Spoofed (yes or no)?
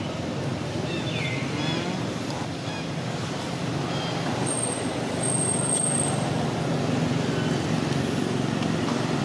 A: no